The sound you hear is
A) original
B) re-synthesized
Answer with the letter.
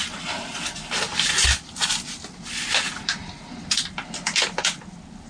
A